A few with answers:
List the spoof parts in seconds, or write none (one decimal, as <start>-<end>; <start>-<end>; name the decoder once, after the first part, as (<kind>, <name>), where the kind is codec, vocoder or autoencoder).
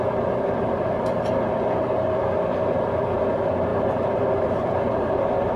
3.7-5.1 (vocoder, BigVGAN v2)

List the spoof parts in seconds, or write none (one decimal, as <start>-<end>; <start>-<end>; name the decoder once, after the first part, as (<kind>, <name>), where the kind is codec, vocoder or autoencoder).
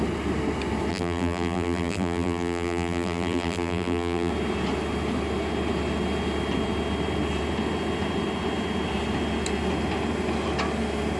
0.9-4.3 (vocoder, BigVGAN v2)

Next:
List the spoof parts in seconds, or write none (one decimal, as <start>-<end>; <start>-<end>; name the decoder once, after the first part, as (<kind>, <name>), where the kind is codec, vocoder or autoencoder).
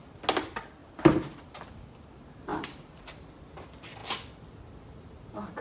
2.5-3.0 (vocoder, BigVGAN v2)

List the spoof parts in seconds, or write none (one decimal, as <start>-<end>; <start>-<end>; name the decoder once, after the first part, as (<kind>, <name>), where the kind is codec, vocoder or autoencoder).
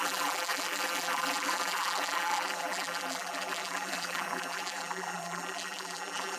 0.0-6.4 (vocoder, BigVGAN v2)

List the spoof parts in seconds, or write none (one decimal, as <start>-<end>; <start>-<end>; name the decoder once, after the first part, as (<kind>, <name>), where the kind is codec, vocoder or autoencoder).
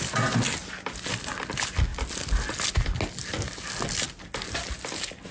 none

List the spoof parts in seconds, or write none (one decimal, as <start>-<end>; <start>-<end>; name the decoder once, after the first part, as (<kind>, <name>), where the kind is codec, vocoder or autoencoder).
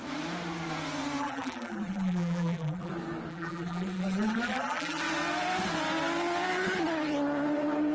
1.2-2.9 (vocoder, BigVGAN v2); 3.3-5.0